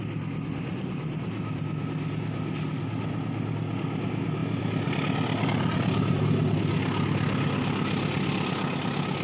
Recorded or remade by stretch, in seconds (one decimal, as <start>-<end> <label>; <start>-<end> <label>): 0.0-4.4 recorded; 4.4-6.2 remade; 6.2-9.2 recorded